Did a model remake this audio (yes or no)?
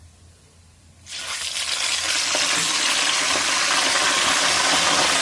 no